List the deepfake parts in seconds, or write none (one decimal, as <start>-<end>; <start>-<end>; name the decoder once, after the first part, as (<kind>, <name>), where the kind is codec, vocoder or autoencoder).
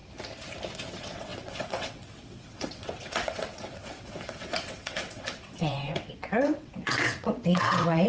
0.9-8.1 (vocoder, WaveNeXt)